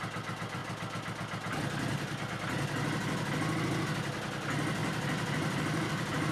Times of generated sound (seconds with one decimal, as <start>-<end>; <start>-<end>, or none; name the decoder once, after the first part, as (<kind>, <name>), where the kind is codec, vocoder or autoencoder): 4.8-6.3 (vocoder, BigVGAN v2)